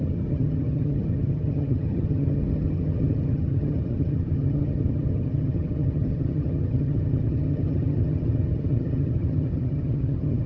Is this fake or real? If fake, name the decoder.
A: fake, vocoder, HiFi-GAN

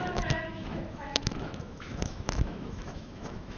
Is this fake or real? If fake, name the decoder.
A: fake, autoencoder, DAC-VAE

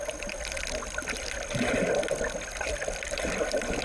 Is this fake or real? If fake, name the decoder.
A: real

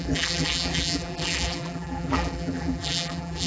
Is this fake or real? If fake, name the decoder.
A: fake, vocoder, BigVGAN v2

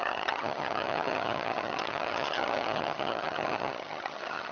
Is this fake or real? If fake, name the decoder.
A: fake, vocoder, HiFi-GAN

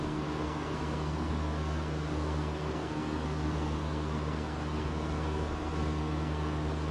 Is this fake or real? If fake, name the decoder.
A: fake, codec, SNAC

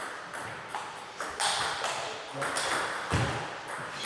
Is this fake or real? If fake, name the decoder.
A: real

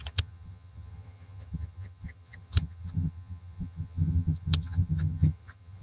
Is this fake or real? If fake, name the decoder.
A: fake, vocoder, HiFi-GAN